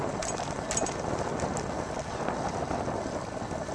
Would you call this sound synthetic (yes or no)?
no